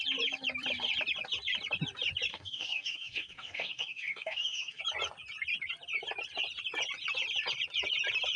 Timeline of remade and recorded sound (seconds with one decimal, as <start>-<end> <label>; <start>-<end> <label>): 0.0-2.3 recorded; 2.3-4.8 remade; 4.8-8.4 recorded